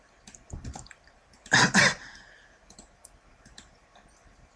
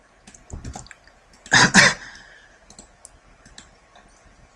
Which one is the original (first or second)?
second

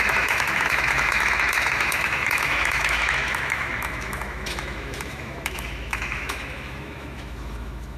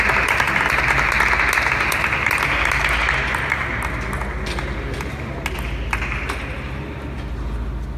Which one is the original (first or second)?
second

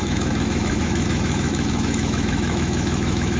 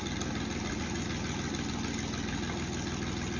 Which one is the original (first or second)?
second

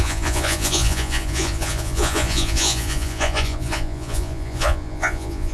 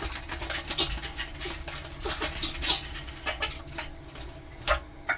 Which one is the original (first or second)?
second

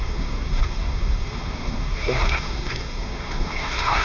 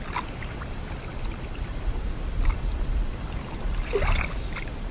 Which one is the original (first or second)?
second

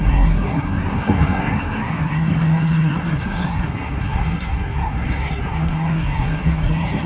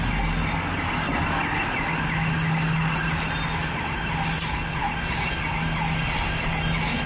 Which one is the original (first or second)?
second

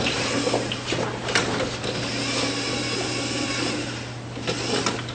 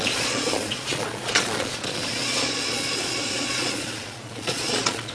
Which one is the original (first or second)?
first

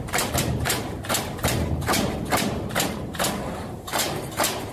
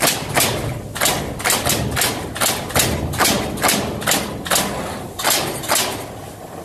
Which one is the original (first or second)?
second